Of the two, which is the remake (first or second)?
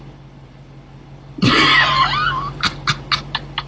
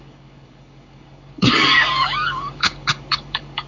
second